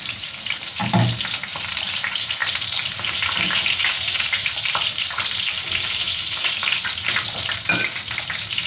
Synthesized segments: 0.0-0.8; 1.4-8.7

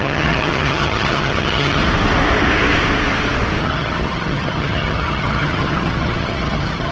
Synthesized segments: 0.0-1.8; 3.6-6.9